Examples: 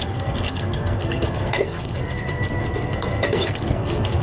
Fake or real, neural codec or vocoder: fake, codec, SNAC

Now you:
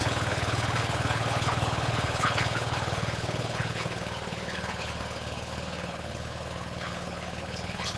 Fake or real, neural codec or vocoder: fake, codec, HILCodec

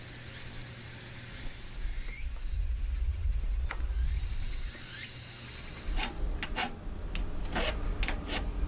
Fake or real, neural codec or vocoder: real